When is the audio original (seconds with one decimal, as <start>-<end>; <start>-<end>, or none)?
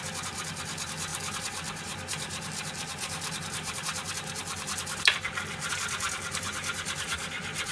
0.0-1.1; 5.7-7.7